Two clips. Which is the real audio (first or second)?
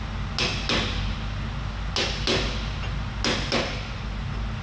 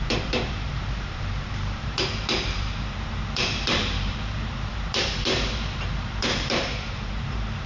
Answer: first